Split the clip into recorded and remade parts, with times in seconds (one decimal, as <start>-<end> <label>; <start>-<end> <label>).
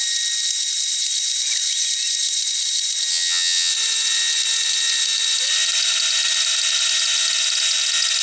0.0-3.1 recorded; 3.1-3.7 remade; 3.7-8.2 recorded